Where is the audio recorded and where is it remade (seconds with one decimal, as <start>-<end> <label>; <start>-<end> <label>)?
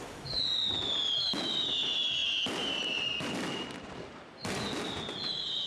0.0-5.7 recorded